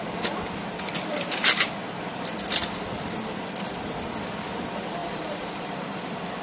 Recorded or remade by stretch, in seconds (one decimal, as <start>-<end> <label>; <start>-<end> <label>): 0.0-5.0 recorded; 5.0-6.0 remade; 6.0-6.4 recorded